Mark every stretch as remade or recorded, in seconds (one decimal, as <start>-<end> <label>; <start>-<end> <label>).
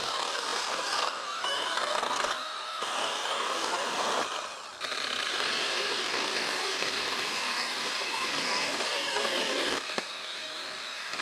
0.0-4.1 remade; 4.1-5.3 recorded; 5.3-11.2 remade